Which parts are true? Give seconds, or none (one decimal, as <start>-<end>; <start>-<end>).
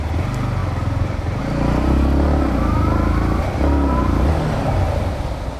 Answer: 0.0-5.6